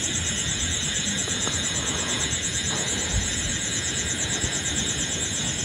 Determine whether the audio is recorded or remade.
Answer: remade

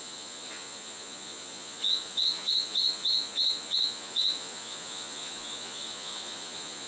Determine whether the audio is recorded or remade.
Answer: remade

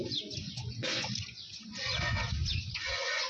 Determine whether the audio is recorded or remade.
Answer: remade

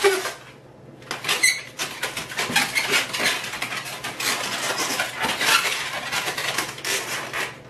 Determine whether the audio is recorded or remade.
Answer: recorded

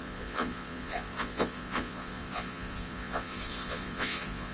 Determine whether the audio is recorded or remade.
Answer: remade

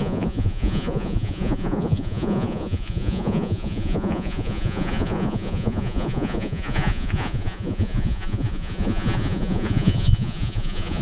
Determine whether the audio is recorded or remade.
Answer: remade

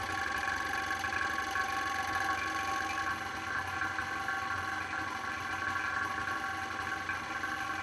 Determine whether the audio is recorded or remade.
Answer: recorded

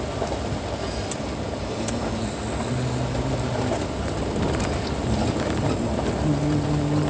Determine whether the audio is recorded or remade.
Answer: recorded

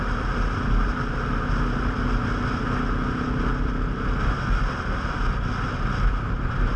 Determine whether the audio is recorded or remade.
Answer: recorded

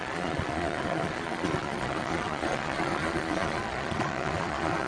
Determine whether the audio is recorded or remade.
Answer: remade